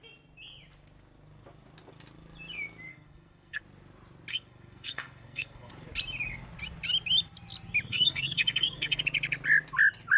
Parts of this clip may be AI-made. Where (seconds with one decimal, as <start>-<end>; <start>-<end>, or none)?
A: 2.9-3.6; 4.3-5.7; 7.9-9.0